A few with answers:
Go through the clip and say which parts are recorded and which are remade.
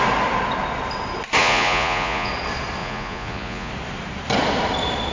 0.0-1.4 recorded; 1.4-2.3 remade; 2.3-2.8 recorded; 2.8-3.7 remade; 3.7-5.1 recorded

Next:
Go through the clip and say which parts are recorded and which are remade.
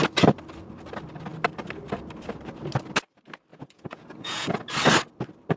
0.0-3.5 recorded; 3.5-4.6 remade; 4.6-5.6 recorded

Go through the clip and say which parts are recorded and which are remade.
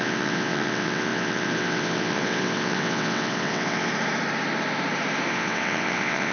0.0-3.9 remade; 3.9-5.3 recorded; 5.3-6.3 remade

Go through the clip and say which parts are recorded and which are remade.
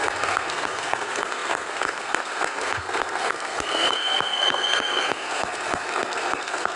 0.0-6.8 remade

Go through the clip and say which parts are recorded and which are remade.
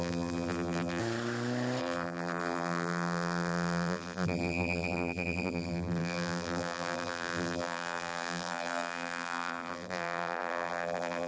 0.0-1.0 remade; 1.0-1.8 recorded; 1.8-11.3 remade